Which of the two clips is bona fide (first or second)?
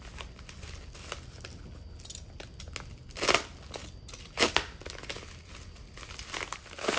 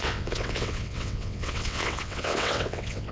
first